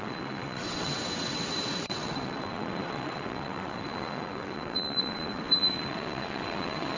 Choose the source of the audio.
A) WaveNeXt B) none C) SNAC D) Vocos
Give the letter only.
A